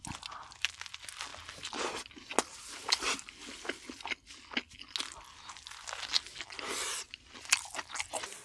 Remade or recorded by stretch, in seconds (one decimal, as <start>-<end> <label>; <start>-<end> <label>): 0.0-8.4 recorded